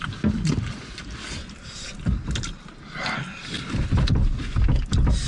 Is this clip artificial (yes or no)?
no